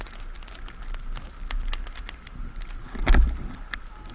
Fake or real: real